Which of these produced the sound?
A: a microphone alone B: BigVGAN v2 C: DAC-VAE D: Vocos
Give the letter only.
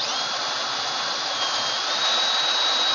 A